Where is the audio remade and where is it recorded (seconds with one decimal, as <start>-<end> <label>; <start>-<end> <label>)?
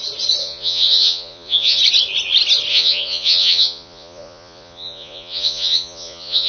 0.0-0.4 recorded; 0.4-1.8 remade; 1.8-2.7 recorded; 2.7-6.5 remade